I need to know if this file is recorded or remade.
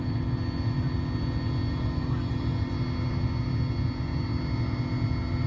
recorded